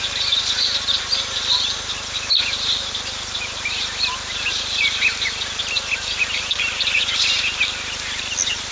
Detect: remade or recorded recorded